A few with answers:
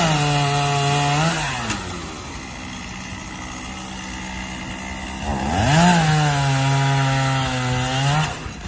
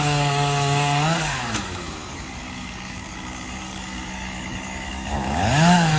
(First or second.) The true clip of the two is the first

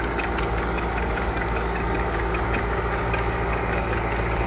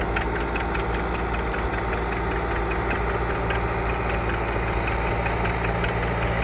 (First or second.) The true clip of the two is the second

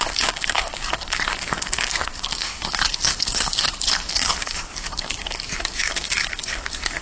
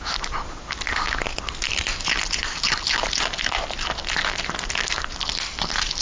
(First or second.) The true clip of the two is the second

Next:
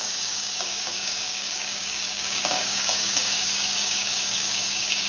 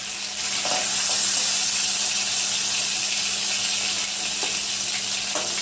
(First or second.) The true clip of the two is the second